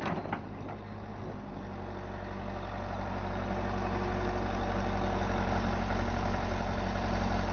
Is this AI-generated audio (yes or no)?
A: no